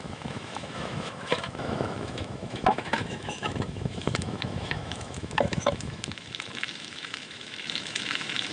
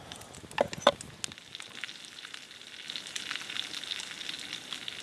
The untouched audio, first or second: second